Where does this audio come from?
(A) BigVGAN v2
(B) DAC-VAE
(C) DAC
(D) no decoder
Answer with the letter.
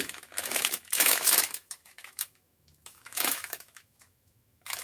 B